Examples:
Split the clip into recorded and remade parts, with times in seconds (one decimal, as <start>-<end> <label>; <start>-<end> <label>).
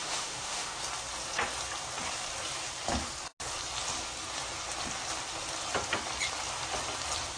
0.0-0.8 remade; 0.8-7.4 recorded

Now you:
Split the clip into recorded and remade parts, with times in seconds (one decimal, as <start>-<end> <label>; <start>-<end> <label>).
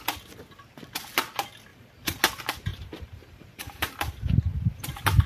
0.0-1.7 recorded; 1.7-2.2 remade; 2.2-2.7 recorded; 2.7-4.8 remade; 4.8-5.3 recorded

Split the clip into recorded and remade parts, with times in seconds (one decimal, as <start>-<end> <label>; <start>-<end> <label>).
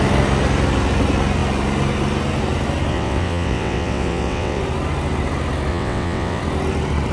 0.0-2.9 recorded; 2.9-4.6 remade; 4.6-5.7 recorded; 5.7-6.4 remade; 6.4-7.1 recorded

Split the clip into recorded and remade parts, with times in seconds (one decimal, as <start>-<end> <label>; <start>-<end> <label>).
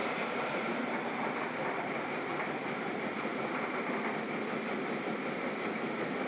0.0-3.3 recorded; 3.3-4.9 remade; 4.9-6.3 recorded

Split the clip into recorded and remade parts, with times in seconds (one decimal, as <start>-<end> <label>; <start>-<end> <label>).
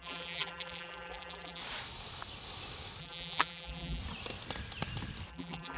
0.0-1.6 remade; 1.6-3.0 recorded; 3.0-4.0 remade; 4.0-5.3 recorded; 5.3-5.8 remade